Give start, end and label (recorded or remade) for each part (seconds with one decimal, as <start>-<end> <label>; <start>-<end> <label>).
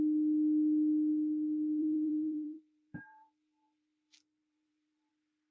0.0-1.8 recorded; 1.8-5.1 remade; 5.1-5.5 recorded